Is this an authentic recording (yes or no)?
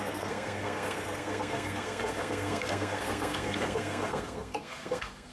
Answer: no